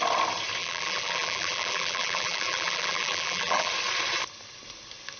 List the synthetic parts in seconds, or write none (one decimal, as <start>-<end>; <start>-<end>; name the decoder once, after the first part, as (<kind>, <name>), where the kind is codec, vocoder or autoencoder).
0.6-3.7 (vocoder, BigVGAN v2)